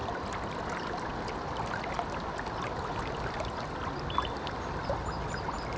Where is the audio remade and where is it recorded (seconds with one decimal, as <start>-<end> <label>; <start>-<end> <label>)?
0.0-5.8 recorded